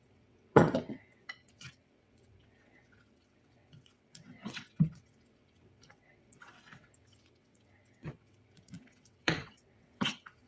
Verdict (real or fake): fake